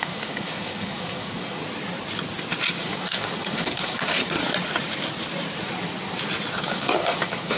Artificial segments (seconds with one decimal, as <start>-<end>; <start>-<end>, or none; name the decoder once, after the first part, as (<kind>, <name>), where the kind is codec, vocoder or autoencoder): 0.0-1.6 (codec, DAC); 2.8-4.2; 6.6-7.6